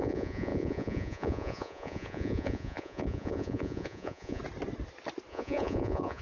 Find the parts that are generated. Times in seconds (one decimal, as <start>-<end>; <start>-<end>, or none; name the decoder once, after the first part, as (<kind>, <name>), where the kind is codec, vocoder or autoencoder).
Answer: 0.0-4.4 (vocoder, Vocos); 5.3-6.2